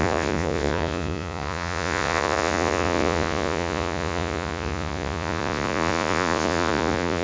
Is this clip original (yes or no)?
no